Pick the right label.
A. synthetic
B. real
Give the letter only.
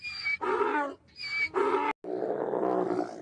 B